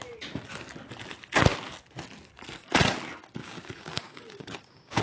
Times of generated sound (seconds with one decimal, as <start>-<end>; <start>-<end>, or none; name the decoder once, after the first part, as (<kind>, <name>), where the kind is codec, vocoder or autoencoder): 3.4-5.0 (codec, DAC)